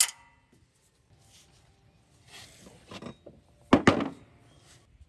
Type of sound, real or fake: real